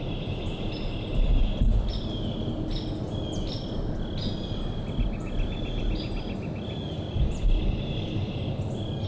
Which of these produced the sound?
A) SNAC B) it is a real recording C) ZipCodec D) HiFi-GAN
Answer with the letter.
B